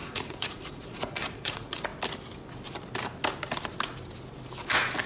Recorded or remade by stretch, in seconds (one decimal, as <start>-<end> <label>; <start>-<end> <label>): 0.0-1.9 remade; 1.9-5.1 recorded